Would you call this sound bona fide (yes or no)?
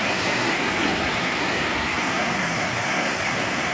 no